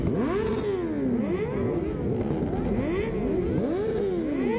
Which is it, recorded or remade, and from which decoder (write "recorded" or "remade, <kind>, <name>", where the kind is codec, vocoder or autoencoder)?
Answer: recorded